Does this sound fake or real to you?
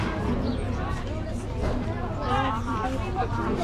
real